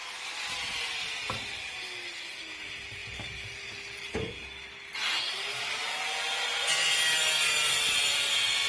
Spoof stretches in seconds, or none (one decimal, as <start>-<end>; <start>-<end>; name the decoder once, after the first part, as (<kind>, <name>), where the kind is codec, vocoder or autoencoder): none